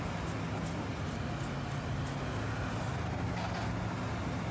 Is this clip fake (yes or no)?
no